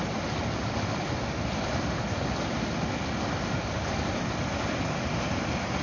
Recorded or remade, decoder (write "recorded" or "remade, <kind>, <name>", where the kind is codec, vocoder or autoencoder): recorded